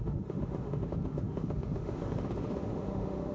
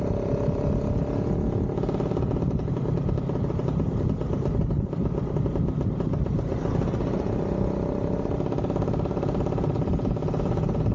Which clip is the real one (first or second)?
second